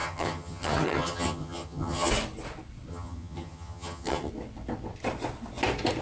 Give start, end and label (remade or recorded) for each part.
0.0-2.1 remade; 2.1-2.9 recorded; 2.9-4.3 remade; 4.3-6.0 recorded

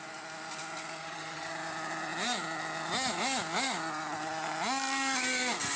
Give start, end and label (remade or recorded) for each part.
0.0-1.0 recorded; 1.0-1.5 remade; 1.5-5.8 recorded